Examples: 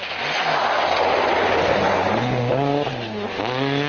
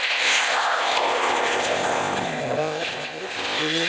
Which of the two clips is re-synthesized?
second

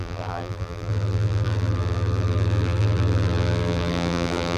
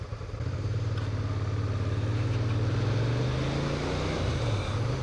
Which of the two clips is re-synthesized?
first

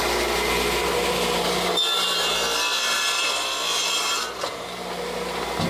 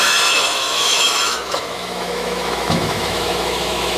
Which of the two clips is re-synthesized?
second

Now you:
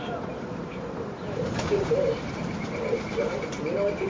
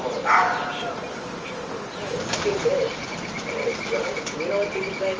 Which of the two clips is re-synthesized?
first